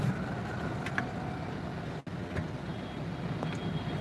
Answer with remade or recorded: recorded